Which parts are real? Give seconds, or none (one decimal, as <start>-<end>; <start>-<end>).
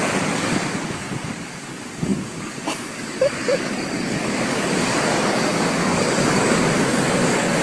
none